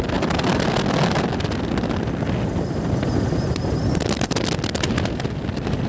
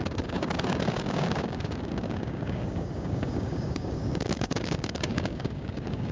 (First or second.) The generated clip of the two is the second